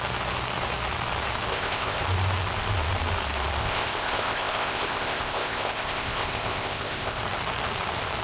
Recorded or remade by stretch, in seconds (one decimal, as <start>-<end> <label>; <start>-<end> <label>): 0.0-1.5 recorded; 1.5-2.0 remade; 2.0-3.6 recorded; 3.6-7.2 remade; 7.2-8.2 recorded